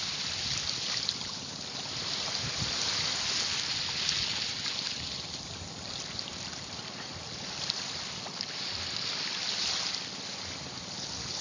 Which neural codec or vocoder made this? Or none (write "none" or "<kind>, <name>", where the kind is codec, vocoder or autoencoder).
none